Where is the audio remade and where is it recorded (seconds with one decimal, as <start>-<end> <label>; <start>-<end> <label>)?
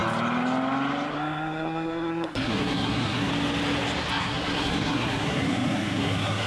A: 0.0-1.1 recorded; 1.1-3.3 remade; 3.3-4.1 recorded; 4.1-6.5 remade